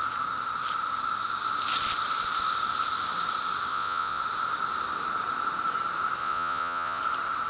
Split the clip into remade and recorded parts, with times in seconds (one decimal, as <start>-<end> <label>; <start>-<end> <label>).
0.0-3.7 recorded; 3.7-4.2 remade; 4.2-6.2 recorded; 6.2-7.0 remade; 7.0-7.5 recorded